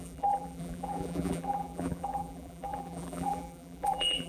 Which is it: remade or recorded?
remade